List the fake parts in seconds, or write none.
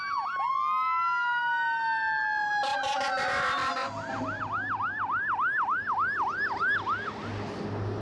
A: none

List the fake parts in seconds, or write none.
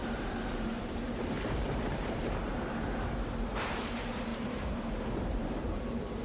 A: 0.0-6.2 (vocoder, BigVGAN v2)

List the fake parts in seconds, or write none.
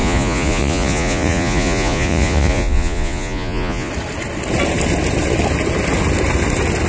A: 0.0-3.9 (vocoder, Vocos)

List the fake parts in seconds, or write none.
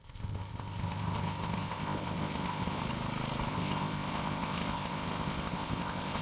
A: 0.0-2.8 (codec, ZipCodec); 3.5-6.2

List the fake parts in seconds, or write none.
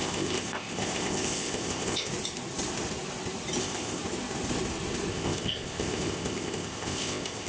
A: 0.0-2.1 (codec, ZipCodec); 3.6-4.0; 5.1-7.5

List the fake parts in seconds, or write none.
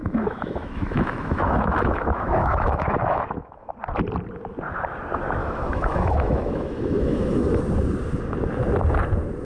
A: 0.0-3.7 (autoencoder, DAC-VAE); 5.4-7.6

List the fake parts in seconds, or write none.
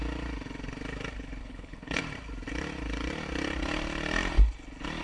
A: 1.4-2.0 (codec, HILCodec)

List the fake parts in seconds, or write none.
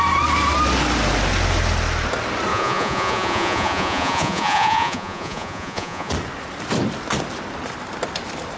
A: 2.5-6.1 (vocoder, Vocos)